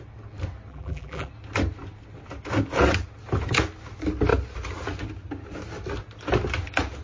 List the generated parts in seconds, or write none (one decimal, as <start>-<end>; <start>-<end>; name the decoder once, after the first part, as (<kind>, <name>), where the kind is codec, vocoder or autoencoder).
0.7-1.3 (vocoder, BigVGAN v2)